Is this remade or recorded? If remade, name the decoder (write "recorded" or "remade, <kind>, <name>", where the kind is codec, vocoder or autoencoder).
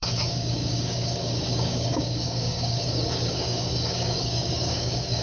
remade, codec, DAC